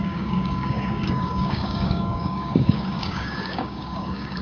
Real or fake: fake